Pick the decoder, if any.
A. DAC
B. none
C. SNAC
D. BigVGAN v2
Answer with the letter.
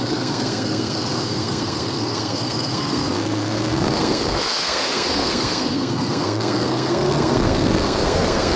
C